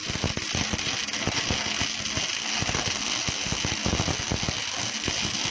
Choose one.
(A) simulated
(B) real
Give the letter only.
B